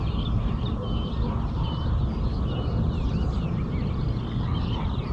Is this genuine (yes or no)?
yes